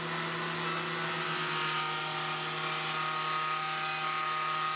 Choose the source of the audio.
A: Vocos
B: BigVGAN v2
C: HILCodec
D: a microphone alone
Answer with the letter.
D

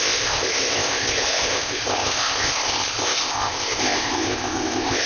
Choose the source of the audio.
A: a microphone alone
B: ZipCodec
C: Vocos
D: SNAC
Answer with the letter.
B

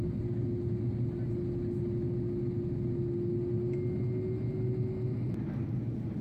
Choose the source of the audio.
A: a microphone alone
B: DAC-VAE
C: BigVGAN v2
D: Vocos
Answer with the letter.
A